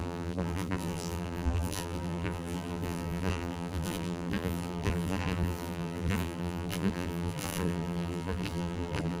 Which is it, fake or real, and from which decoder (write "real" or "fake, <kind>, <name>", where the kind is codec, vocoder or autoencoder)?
fake, vocoder, BigVGAN v2